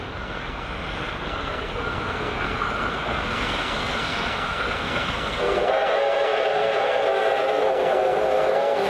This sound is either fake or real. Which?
fake